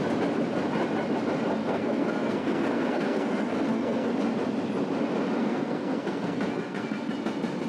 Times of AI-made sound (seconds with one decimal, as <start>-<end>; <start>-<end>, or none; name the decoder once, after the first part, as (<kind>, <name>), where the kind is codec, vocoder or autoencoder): 1.6-4.1 (codec, SNAC); 5.4-7.1